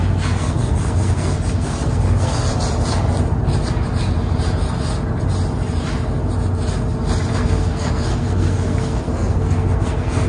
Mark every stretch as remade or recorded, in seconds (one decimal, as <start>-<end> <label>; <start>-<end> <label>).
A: 0.0-2.5 remade; 2.5-7.3 recorded; 7.3-10.3 remade